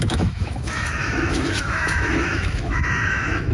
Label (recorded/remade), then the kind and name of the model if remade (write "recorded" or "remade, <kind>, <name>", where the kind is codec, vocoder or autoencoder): remade, autoencoder, DAC-VAE